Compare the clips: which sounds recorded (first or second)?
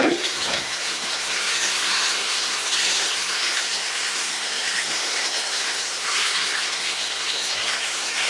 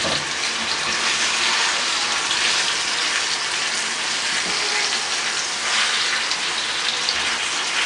second